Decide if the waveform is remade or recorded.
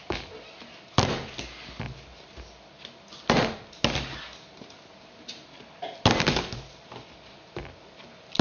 recorded